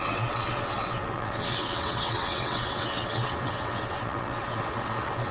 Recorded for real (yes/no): no